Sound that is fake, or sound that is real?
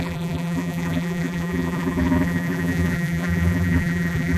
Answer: fake